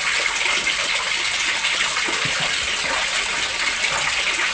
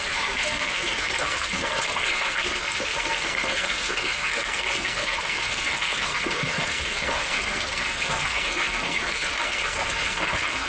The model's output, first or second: second